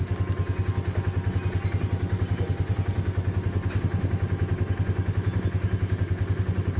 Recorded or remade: recorded